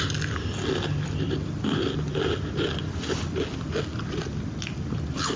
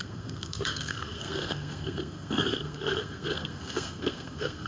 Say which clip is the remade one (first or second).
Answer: second